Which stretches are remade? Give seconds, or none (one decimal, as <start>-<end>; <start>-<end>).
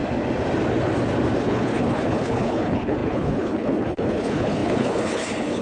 1.4-5.6